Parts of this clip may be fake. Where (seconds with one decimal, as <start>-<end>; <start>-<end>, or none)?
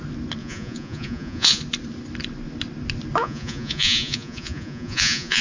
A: 0.4-1.6; 3.2-5.4